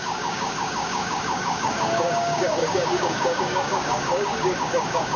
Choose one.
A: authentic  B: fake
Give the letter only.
B